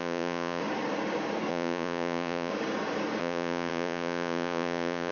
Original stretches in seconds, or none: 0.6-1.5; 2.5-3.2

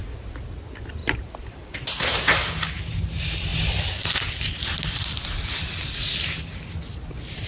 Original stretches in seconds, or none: 0.0-1.0; 1.7-7.5

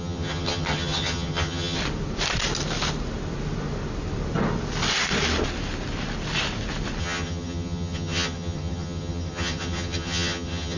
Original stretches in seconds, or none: 1.8-7.0

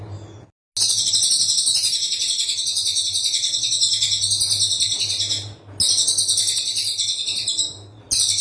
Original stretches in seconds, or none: 0.0-8.4

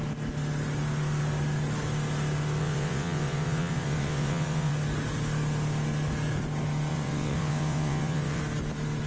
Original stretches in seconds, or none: 0.0-2.6; 4.7-6.9; 8.4-9.1